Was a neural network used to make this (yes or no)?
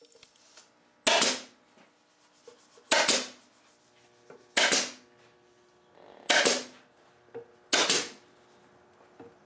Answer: no